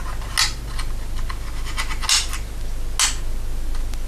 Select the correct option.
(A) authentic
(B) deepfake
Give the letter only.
A